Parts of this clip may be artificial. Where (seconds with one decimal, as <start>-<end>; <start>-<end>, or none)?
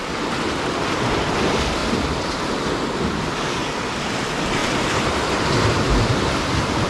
1.8-2.4; 4.6-6.9